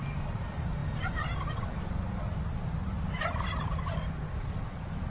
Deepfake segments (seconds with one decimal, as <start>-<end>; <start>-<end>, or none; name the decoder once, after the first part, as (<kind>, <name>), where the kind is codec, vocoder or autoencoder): none